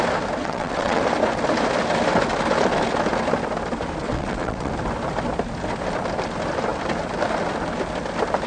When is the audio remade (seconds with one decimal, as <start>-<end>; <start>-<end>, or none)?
0.4-1.0; 4.0-4.7